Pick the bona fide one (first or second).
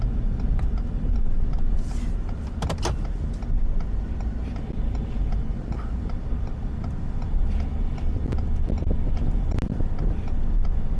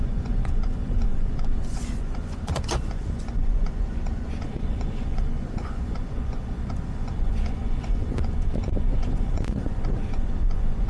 first